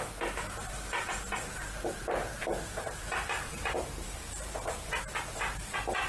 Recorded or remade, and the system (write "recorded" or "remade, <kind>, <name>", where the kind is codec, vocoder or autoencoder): remade, vocoder, BigVGAN v2